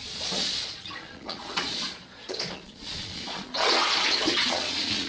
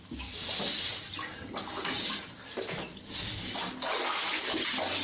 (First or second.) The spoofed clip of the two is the first